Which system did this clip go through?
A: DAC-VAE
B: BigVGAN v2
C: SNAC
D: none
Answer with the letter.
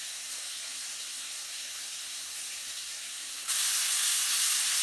C